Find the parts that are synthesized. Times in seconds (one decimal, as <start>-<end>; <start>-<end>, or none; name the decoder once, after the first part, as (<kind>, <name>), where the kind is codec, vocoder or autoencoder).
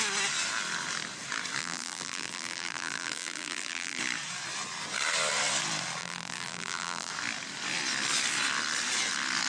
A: 1.6-4.0 (vocoder, BigVGAN v2); 6.0-7.1